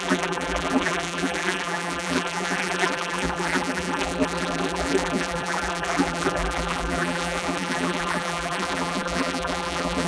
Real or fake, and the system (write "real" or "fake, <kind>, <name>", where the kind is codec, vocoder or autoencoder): fake, vocoder, BigVGAN v2